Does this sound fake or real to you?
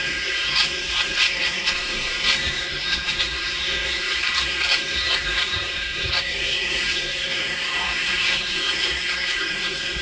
fake